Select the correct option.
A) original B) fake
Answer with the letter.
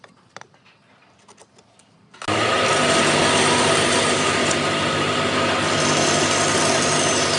A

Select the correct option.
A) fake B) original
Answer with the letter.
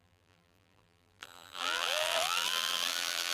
A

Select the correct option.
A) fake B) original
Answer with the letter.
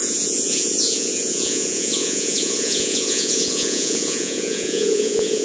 A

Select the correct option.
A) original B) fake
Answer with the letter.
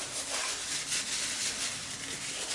A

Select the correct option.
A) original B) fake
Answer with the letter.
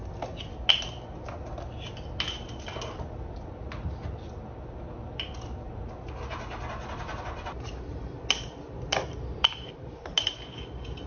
A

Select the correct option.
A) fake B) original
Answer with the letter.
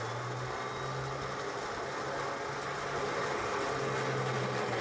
B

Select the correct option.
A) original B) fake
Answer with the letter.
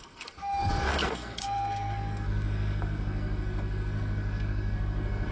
B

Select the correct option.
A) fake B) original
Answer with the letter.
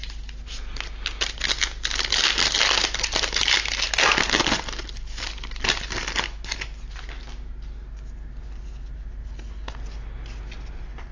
B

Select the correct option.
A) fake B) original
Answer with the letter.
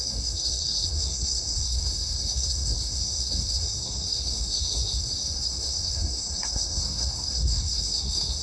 A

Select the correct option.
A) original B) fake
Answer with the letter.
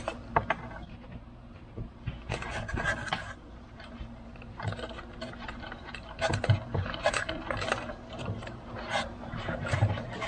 B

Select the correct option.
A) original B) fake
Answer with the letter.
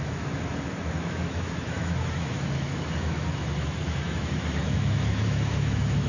B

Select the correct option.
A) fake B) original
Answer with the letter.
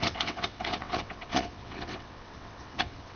A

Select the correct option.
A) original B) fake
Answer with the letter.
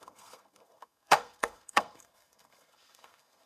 B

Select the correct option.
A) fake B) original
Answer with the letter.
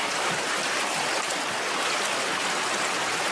B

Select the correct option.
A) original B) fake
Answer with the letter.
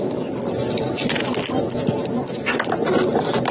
B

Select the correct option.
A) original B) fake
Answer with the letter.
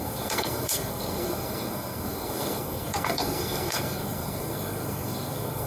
B